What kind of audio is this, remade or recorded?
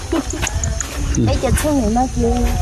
recorded